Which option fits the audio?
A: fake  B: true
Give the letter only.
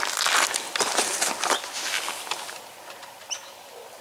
B